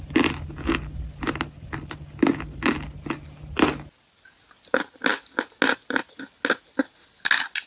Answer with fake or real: real